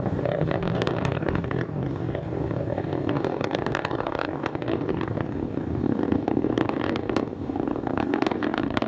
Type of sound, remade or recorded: remade